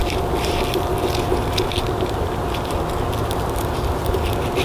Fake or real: real